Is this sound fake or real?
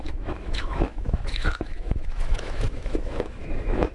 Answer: fake